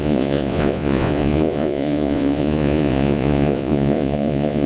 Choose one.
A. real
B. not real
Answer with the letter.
B